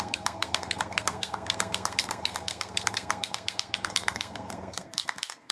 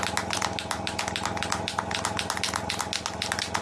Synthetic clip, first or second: first